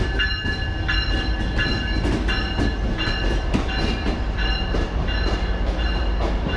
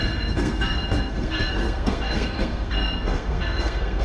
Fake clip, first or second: second